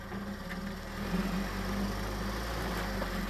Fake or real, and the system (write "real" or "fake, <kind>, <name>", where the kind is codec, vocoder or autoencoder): real